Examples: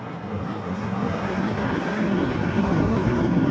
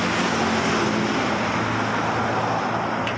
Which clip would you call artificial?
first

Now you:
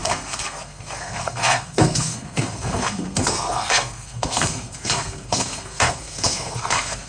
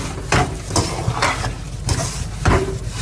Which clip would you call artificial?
first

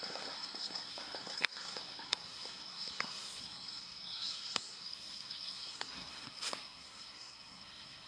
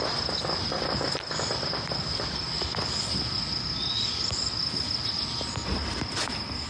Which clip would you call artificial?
first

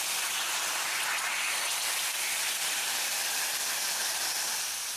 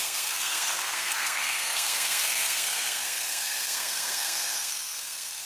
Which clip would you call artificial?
second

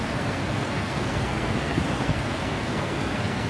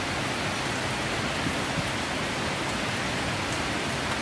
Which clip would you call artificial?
first